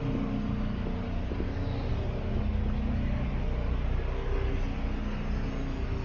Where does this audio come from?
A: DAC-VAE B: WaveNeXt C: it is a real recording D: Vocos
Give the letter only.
C